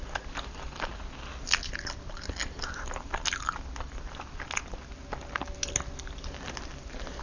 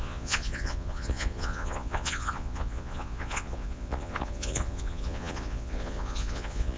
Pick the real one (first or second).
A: first